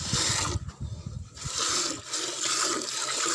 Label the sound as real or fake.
real